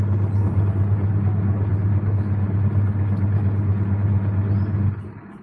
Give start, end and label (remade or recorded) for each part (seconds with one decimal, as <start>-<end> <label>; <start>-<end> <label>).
0.0-5.4 recorded